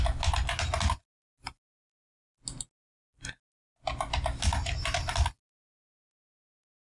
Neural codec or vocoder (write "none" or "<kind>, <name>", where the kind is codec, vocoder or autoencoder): none